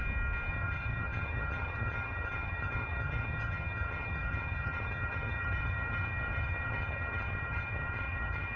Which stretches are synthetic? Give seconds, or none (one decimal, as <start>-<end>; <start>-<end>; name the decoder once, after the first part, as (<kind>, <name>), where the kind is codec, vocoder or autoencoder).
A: 0.5-8.6 (vocoder, HiFi-GAN)